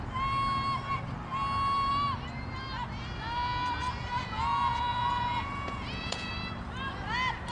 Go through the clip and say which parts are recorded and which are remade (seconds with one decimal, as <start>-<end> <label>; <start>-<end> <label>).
0.0-4.0 recorded; 4.0-6.3 remade; 6.3-7.5 recorded